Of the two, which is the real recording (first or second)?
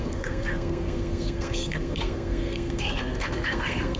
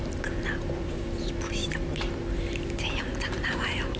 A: second